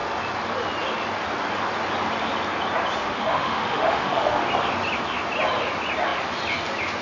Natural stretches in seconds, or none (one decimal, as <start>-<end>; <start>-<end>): 0.0-3.0; 4.5-7.0